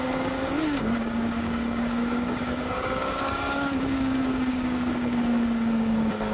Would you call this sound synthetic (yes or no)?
yes